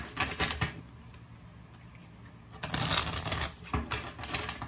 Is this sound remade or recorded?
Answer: recorded